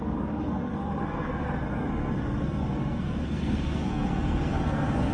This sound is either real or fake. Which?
fake